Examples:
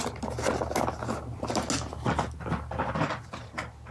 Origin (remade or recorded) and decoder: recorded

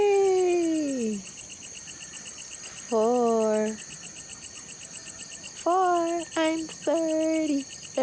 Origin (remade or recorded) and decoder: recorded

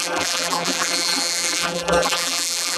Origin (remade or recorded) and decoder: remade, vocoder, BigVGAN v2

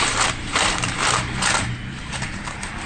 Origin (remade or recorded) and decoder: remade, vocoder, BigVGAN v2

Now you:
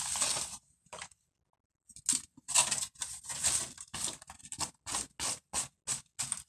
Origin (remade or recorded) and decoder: recorded